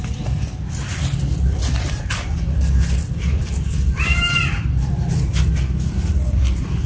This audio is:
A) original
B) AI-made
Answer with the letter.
B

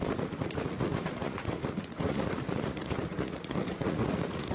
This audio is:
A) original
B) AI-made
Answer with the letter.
B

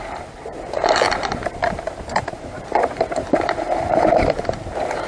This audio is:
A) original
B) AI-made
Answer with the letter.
B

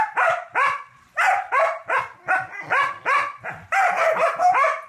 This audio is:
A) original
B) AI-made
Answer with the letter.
A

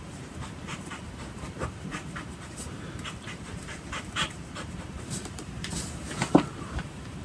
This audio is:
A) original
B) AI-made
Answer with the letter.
B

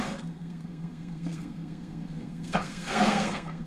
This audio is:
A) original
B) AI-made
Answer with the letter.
B